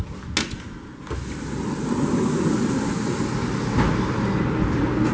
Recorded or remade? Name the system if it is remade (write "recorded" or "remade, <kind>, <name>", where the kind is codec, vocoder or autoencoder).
recorded